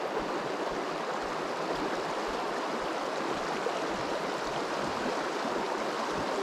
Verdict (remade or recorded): recorded